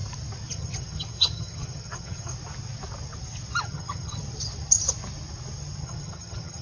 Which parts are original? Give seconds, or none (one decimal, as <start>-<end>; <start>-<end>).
0.0-0.5; 2.3-3.6; 4.2-5.8